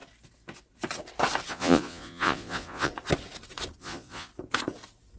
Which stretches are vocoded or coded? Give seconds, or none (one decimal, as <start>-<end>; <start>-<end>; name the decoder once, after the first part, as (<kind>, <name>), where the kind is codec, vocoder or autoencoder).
1.5-2.9 (vocoder, Vocos); 3.8-4.3